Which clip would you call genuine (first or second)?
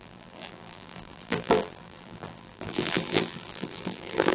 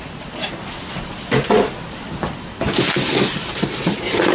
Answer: second